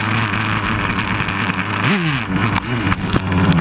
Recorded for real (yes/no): yes